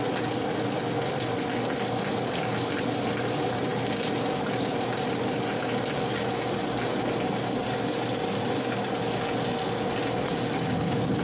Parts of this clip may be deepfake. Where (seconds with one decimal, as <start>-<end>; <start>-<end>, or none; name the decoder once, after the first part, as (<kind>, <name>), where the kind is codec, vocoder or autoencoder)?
none